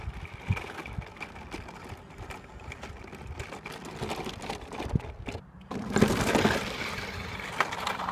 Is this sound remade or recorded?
recorded